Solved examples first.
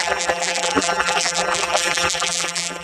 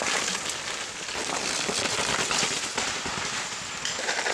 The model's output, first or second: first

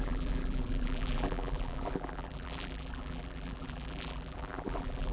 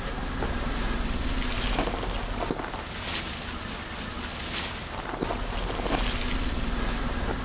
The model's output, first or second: first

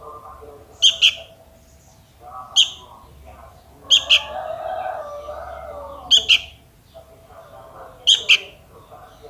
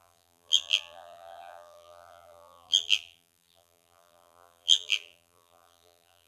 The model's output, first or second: second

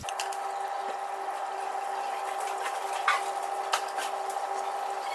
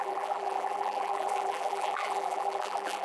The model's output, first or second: second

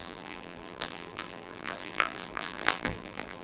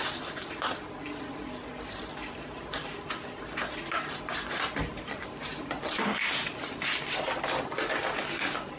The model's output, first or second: first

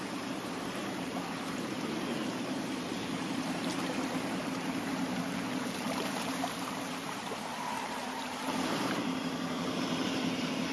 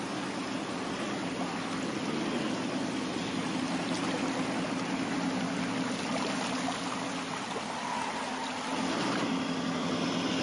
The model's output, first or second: first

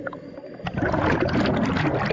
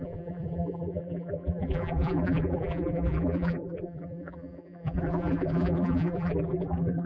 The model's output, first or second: second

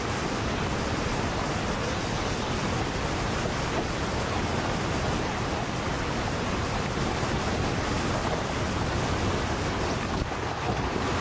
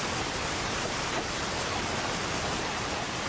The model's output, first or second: second